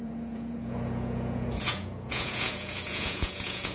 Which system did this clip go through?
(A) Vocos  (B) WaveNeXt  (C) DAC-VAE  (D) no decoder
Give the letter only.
A